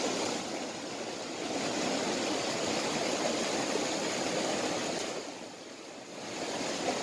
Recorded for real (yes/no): yes